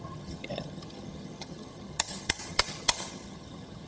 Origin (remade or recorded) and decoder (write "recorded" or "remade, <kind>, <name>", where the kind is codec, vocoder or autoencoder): remade, vocoder, HiFi-GAN